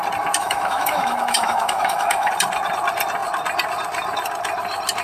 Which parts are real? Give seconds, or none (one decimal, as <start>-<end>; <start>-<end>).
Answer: 0.0-0.4; 2.3-5.0